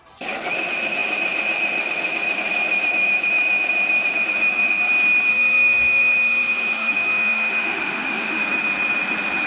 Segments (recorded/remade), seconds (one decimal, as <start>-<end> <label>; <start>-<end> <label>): 0.0-5.3 recorded; 5.3-8.4 remade; 8.4-9.5 recorded